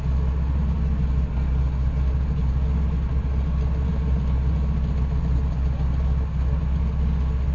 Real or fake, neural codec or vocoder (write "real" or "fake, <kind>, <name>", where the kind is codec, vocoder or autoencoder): real